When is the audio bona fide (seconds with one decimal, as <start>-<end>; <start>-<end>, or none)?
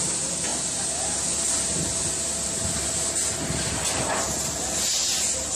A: 0.0-5.5